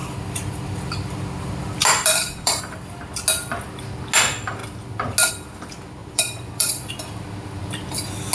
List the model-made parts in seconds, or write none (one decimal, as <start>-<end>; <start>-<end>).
0.0-2.6; 6.0-6.9